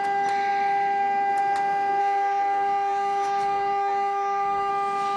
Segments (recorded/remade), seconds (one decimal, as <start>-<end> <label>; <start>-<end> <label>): 0.0-2.0 recorded; 2.0-4.7 remade; 4.7-5.2 recorded

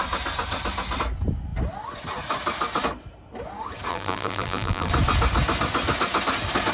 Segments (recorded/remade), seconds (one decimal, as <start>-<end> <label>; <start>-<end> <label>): 0.0-3.9 recorded; 3.9-4.9 remade; 4.9-6.7 recorded

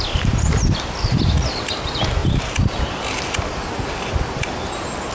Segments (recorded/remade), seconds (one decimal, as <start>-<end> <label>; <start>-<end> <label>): 0.0-5.1 recorded

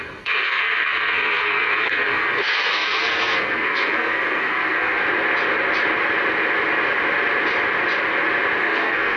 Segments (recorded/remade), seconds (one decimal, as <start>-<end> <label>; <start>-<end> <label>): 0.0-5.0 remade; 5.0-8.6 recorded; 8.6-9.2 remade